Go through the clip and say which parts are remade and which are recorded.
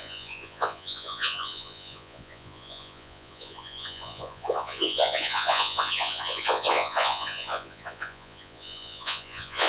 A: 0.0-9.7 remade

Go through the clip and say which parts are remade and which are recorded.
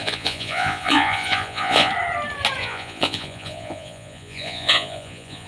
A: 0.0-1.9 remade; 1.9-2.6 recorded; 2.6-5.5 remade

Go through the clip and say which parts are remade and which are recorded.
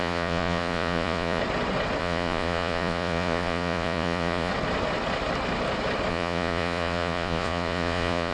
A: 0.0-1.4 remade; 1.4-2.0 recorded; 2.0-4.5 remade; 4.5-6.1 recorded; 6.1-8.3 remade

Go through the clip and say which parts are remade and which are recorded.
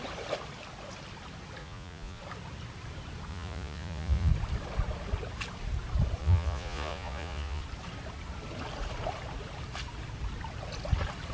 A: 0.0-1.6 recorded; 1.6-2.2 remade; 2.2-3.3 recorded; 3.3-4.3 remade; 4.3-6.2 recorded; 6.2-7.6 remade; 7.6-11.3 recorded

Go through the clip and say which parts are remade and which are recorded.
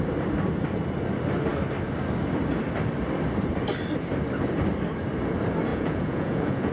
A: 0.0-5.7 recorded; 5.7-6.7 remade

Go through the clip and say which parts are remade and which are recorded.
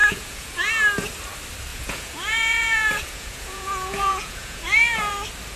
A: 0.0-0.7 remade; 0.7-1.7 recorded; 1.7-5.1 remade; 5.1-5.6 recorded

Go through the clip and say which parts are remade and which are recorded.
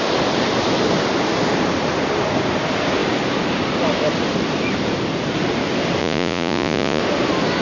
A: 0.0-6.0 recorded; 6.0-7.0 remade; 7.0-7.6 recorded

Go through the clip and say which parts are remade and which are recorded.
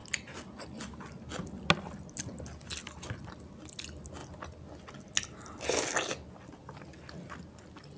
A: 0.0-8.0 recorded